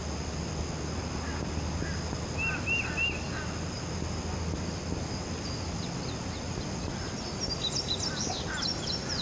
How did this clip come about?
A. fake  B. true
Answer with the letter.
B